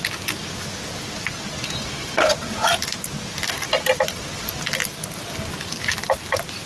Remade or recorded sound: recorded